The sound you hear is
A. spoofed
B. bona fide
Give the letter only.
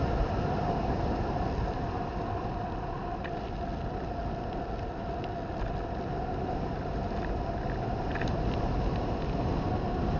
B